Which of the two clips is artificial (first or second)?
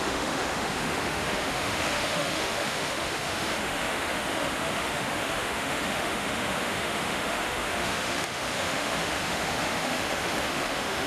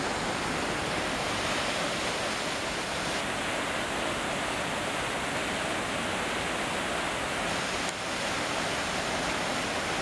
first